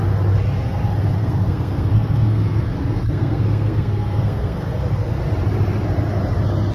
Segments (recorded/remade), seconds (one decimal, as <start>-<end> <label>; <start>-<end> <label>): 0.0-1.2 recorded; 1.2-5.2 remade; 5.2-6.7 recorded